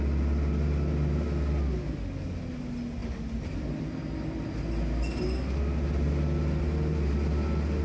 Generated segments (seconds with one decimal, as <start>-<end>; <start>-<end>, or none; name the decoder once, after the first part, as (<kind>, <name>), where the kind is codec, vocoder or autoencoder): none